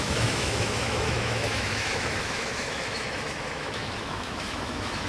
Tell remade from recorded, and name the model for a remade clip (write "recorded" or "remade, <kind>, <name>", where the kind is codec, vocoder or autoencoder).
remade, autoencoder, DAC-VAE